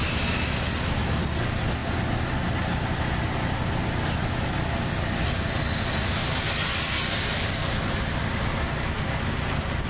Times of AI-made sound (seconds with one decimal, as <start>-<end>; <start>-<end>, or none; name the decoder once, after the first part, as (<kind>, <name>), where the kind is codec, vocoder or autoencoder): none